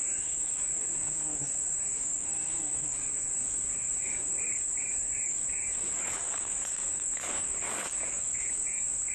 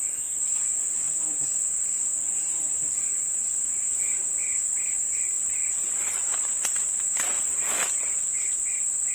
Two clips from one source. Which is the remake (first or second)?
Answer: first